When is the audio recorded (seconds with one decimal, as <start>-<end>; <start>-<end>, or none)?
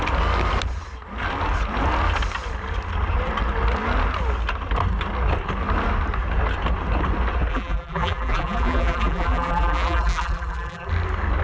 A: 0.0-7.5; 10.9-11.4